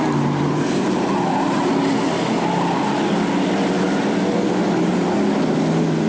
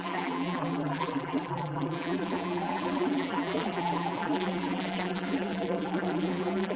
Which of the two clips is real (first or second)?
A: first